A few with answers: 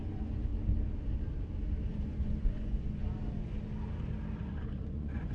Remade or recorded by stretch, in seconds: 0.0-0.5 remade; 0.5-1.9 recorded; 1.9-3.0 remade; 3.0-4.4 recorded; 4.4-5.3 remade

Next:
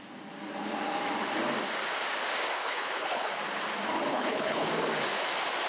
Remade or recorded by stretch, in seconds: 0.0-2.5 recorded; 2.5-3.3 remade; 3.3-4.1 recorded; 4.1-4.7 remade; 4.7-5.7 recorded

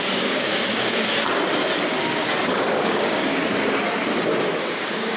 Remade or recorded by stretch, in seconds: 0.0-1.1 remade; 1.1-2.4 recorded; 2.4-3.5 remade; 3.5-4.7 recorded; 4.7-5.2 remade

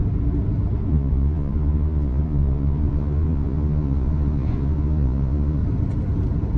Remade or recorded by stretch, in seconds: 0.0-0.8 recorded; 0.8-5.6 remade; 5.6-6.6 recorded

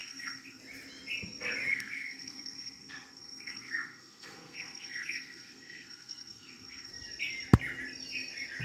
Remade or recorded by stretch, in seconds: 0.0-0.6 remade; 0.6-1.7 recorded; 1.7-6.9 remade; 6.9-8.6 recorded

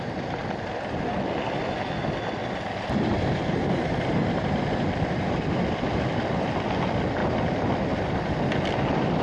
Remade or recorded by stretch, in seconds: 0.0-9.2 recorded

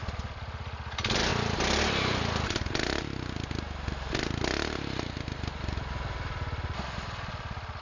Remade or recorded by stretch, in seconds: 0.0-7.8 recorded